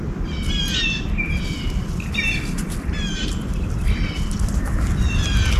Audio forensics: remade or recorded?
recorded